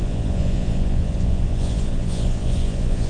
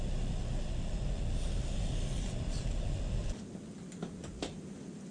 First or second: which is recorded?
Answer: second